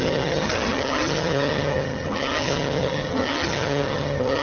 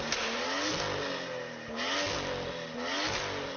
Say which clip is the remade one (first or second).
first